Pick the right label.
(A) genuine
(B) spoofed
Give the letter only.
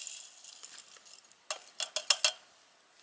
A